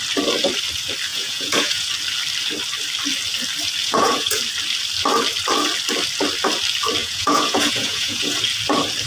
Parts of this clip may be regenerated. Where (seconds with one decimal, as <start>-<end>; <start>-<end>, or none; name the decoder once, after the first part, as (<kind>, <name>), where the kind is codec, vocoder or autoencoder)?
1.1-1.9 (vocoder, Vocos); 3.8-4.4; 7.0-8.4